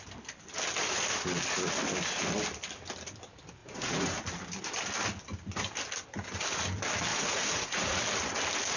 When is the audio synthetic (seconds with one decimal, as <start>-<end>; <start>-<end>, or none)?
3.6-4.2; 7.1-8.0